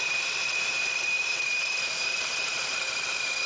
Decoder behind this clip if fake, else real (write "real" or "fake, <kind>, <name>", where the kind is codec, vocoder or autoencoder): fake, vocoder, BigVGAN v2